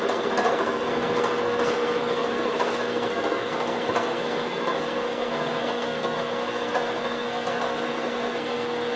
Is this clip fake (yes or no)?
yes